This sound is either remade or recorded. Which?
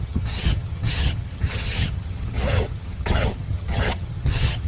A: remade